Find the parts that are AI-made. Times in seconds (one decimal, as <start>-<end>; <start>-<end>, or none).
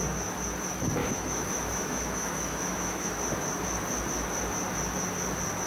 1.0-3.1